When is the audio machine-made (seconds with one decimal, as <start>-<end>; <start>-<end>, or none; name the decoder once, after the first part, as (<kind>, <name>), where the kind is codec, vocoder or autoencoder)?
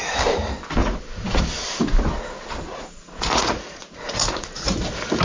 0.8-1.4 (vocoder, Vocos); 2.7-4.8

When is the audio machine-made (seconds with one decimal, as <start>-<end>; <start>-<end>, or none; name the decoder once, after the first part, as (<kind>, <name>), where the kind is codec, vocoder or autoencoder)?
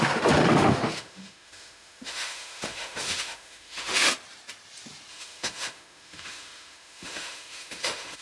0.0-4.1 (autoencoder, DAC-VAE); 5.1-8.2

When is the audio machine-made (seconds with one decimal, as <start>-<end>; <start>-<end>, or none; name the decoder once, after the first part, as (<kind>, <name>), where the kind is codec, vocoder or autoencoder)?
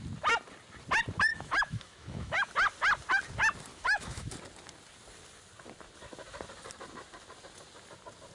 1.3-2.5 (autoencoder, DAC-VAE); 3.7-4.3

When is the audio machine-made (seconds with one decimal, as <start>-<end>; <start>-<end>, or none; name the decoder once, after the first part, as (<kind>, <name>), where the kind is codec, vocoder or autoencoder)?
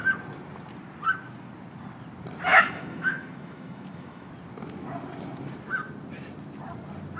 2.5-4.3 (autoencoder, DAC-VAE)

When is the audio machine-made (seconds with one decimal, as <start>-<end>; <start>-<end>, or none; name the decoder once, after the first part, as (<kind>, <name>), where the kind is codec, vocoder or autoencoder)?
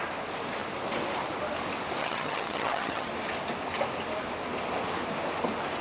2.0-3.1 (vocoder, HiFi-GAN)